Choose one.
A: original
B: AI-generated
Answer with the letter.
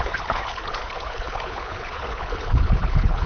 B